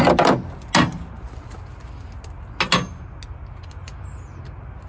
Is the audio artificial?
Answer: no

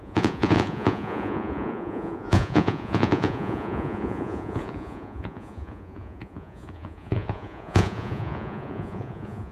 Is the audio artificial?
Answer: yes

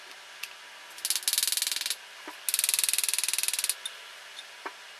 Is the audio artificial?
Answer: no